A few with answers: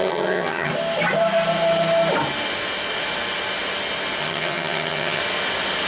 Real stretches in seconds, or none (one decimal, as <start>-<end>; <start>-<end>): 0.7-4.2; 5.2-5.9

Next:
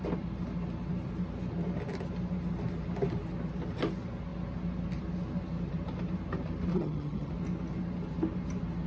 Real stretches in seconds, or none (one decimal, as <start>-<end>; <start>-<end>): 0.0-6.7; 7.3-8.9

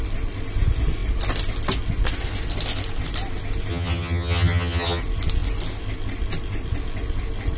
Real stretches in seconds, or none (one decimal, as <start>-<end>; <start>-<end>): 0.0-3.7; 5.0-7.6

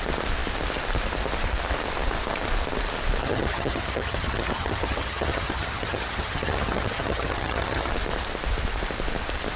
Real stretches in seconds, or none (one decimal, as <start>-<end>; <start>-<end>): 0.0-3.2; 7.9-9.6

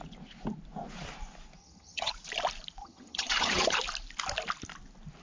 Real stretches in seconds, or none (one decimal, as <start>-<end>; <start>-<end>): 0.0-1.6; 2.1-2.8; 3.8-5.2

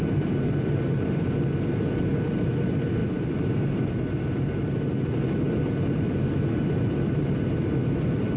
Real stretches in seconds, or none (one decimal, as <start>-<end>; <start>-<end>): 0.0-8.4